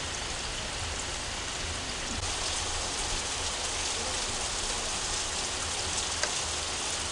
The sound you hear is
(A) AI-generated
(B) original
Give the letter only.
B